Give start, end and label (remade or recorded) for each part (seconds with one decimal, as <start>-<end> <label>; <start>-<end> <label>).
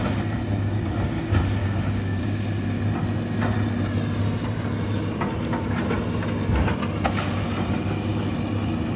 0.0-1.6 recorded; 1.6-2.2 remade; 2.2-9.0 recorded